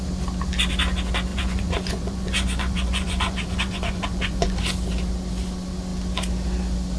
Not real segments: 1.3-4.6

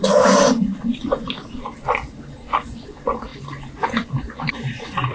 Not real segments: none

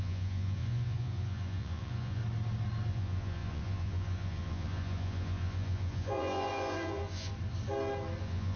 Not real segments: 0.0-2.2; 2.9-7.3; 8.2-8.6

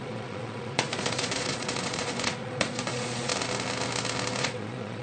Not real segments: 0.0-3.3; 4.4-5.0

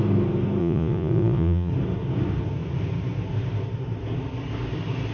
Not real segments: 0.6-1.7

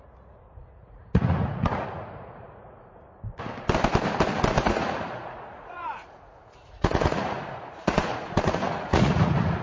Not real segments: 0.0-3.0; 4.6-9.6

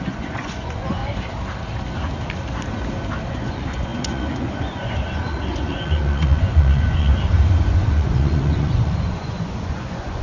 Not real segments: 0.0-1.0; 3.3-7.1; 7.7-10.2